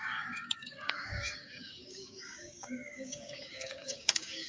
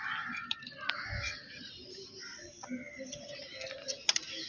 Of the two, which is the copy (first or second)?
first